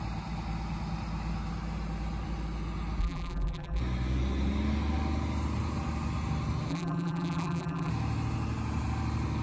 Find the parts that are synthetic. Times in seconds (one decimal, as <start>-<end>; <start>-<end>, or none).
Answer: 3.0-3.8; 6.7-7.9